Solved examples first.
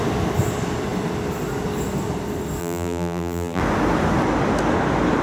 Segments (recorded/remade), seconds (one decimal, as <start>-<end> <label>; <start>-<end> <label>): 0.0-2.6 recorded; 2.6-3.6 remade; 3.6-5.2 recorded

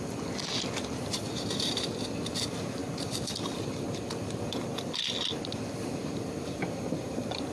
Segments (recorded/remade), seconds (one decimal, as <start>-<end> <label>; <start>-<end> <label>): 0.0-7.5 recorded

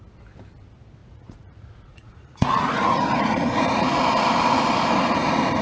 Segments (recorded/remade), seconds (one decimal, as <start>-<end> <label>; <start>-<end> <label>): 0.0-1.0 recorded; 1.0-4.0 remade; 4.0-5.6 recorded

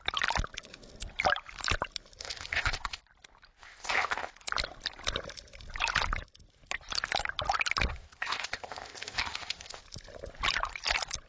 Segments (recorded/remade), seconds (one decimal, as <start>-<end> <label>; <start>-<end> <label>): 0.0-2.2 recorded; 2.2-3.0 remade; 3.0-3.6 recorded; 3.6-4.3 remade; 4.3-7.9 recorded; 7.9-9.8 remade; 9.8-11.3 recorded